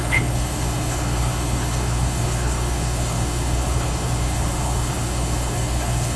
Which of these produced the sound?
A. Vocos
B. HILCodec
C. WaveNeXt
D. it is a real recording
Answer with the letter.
B